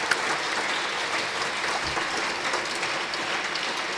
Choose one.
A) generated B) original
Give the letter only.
B